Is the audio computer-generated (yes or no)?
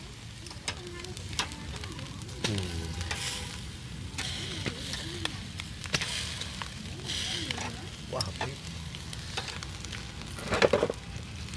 no